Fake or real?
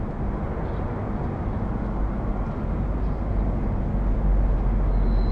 real